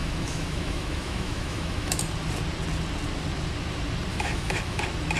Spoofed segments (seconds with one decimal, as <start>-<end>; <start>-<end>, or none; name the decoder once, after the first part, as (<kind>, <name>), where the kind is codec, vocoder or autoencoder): 0.0-2.0 (autoencoder, DAC-VAE); 4.1-4.8